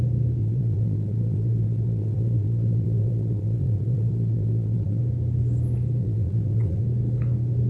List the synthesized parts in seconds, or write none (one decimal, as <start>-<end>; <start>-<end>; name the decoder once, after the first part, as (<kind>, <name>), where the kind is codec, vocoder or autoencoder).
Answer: 0.4-5.0 (vocoder, Vocos); 6.0-6.8